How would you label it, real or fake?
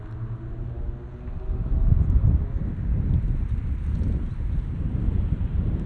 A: real